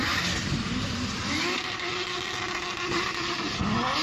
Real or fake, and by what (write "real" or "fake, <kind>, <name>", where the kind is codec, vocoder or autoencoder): real